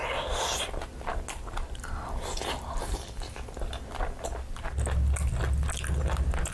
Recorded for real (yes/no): yes